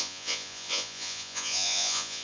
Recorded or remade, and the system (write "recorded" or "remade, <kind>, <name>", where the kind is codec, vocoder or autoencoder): remade, vocoder, Vocos